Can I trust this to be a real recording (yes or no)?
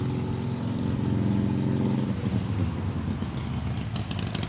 yes